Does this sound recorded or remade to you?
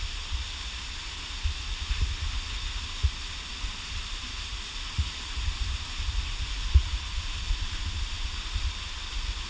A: recorded